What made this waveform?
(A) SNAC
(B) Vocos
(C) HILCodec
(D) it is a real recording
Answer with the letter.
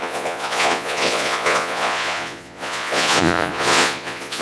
B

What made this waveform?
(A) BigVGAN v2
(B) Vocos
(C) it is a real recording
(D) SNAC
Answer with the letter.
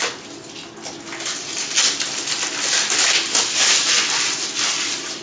C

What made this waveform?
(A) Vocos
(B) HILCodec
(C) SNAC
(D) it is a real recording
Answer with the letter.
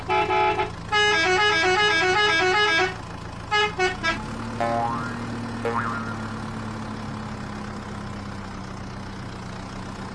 D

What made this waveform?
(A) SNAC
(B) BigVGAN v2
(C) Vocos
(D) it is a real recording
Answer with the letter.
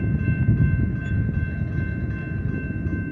D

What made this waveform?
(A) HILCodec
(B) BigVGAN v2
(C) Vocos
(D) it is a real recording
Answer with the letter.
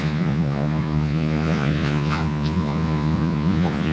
C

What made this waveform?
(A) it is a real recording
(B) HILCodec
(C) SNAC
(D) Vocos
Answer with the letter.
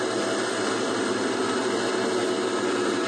A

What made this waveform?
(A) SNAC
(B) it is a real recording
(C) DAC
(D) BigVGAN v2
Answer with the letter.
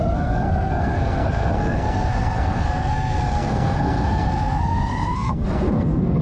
A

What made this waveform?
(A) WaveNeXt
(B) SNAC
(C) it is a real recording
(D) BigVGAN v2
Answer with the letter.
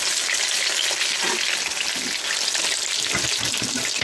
C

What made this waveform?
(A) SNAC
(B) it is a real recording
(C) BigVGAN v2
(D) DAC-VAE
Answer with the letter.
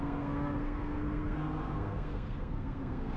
A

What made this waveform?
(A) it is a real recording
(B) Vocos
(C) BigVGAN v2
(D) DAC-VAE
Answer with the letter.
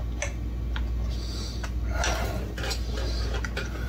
A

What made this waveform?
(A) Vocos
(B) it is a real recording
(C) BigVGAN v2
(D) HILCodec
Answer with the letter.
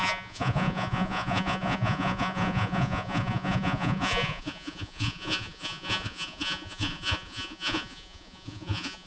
A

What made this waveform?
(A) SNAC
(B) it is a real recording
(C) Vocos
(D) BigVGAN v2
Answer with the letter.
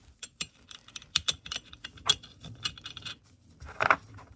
D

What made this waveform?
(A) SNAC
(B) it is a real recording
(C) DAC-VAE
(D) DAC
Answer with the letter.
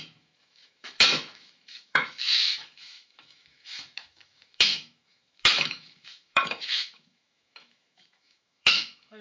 C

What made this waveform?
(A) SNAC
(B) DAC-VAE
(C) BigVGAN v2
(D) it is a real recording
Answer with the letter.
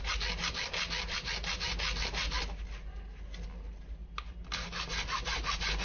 D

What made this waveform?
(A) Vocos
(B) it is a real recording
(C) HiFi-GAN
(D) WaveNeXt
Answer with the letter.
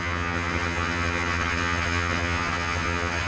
C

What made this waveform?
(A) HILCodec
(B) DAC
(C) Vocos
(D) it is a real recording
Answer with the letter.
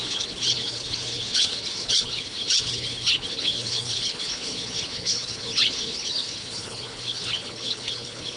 A